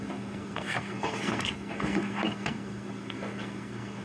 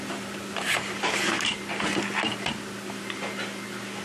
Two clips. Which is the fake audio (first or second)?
first